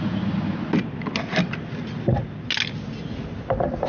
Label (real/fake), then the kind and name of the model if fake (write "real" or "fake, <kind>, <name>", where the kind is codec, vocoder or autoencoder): real